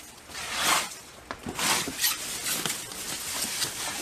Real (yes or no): yes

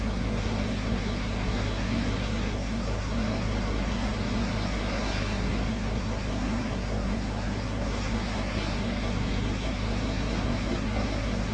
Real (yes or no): no